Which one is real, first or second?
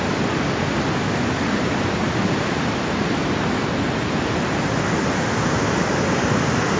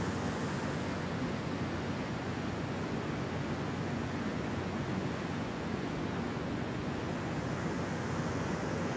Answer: first